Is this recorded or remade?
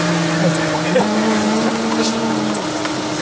recorded